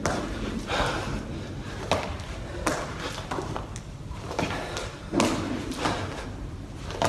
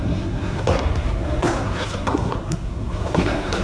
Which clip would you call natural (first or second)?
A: first